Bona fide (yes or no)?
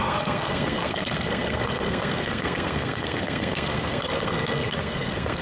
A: no